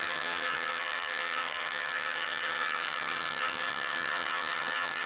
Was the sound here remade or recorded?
remade